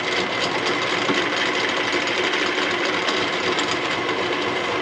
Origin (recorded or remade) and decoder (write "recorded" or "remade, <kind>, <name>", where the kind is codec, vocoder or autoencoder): remade, vocoder, BigVGAN v2